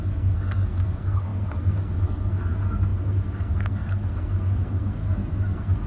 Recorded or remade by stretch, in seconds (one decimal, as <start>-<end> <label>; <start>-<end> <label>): 0.0-5.9 remade